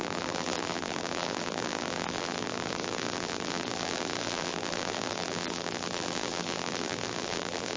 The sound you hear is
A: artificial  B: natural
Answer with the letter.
A